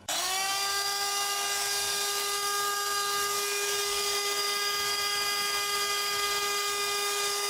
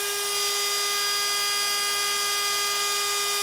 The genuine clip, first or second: second